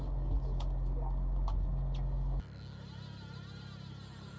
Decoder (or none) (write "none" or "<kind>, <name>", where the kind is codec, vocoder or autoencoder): none